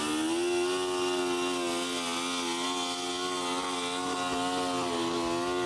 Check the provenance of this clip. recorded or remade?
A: recorded